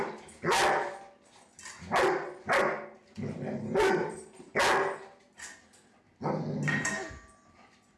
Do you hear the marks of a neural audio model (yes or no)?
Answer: no